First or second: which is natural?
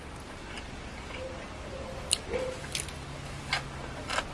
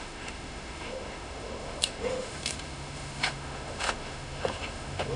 first